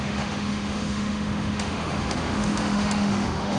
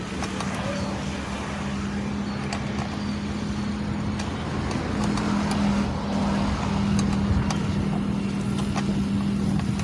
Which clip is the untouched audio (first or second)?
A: second